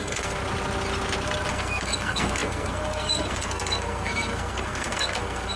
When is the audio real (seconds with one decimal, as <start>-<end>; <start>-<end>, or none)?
0.4-1.5